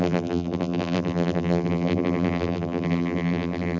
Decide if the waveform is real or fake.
fake